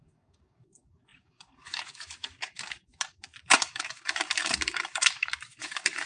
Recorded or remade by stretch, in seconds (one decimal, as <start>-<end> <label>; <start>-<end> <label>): 0.0-6.1 remade